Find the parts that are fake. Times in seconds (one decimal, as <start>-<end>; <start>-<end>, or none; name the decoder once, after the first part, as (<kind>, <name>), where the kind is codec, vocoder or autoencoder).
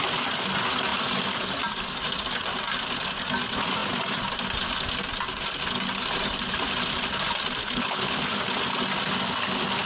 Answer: 7.6-8.2 (codec, HILCodec)